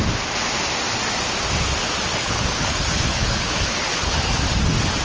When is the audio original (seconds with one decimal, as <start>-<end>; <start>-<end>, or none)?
0.0-2.1; 4.4-5.0